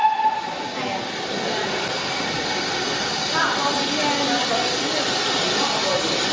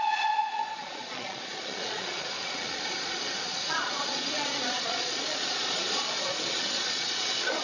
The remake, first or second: second